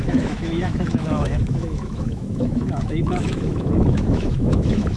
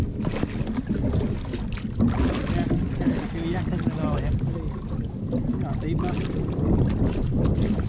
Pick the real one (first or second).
second